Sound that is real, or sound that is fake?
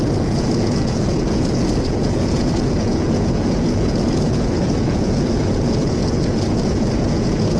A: fake